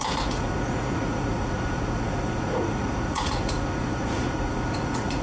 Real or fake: fake